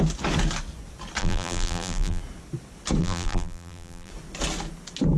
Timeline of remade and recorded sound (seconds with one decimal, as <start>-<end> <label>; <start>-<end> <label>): 0.0-1.2 recorded; 1.2-2.2 remade; 2.2-3.0 recorded; 3.0-4.1 remade; 4.1-5.2 recorded